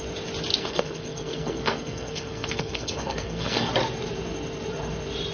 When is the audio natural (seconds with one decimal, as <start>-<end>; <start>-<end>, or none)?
0.0-0.5; 3.7-5.3